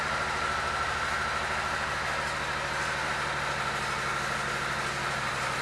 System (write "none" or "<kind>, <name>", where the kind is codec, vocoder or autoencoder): none